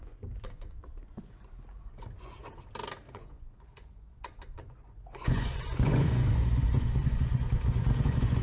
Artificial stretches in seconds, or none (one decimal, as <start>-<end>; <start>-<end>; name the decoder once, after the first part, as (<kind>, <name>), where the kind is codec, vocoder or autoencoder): 0.0-2.4 (vocoder, Vocos); 3.1-8.4